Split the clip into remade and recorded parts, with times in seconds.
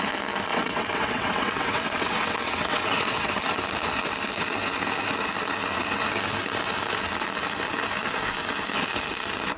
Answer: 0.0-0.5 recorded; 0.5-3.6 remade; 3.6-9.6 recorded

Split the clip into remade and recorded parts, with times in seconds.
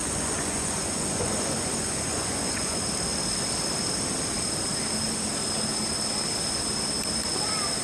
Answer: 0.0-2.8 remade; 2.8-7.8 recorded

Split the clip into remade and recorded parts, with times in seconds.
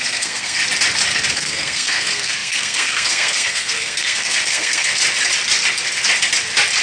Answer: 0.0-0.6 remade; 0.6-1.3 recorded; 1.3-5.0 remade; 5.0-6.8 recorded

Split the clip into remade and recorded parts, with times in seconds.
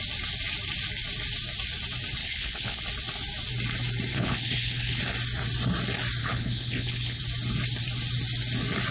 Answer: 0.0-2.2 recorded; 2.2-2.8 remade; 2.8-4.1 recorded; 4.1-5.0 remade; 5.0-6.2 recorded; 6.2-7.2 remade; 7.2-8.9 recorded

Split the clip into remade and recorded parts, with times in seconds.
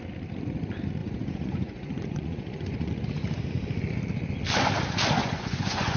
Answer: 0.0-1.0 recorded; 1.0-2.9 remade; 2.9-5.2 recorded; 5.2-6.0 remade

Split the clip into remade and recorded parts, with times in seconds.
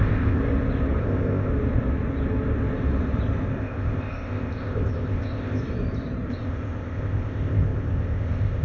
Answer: 0.0-0.4 remade; 0.4-1.0 recorded; 1.0-1.5 remade; 1.5-3.6 recorded; 3.6-5.6 remade; 5.6-6.3 recorded; 6.3-8.6 remade